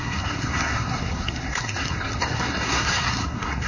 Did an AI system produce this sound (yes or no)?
yes